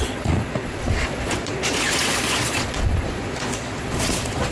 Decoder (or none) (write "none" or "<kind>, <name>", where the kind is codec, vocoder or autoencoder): vocoder, Vocos